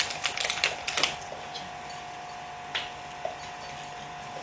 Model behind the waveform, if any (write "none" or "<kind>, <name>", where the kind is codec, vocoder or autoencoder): none